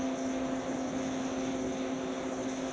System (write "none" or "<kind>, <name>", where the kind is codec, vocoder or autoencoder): none